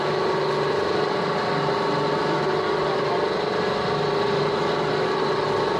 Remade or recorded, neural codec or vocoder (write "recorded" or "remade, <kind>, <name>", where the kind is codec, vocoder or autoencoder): recorded